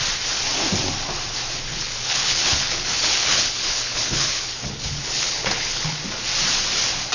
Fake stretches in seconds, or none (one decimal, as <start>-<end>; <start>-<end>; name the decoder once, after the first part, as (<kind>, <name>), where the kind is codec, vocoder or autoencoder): 1.7-6.0 (codec, HILCodec)